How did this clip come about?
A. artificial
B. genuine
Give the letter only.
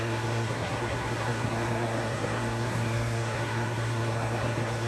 A